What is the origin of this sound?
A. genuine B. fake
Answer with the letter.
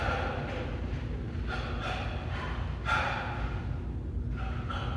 A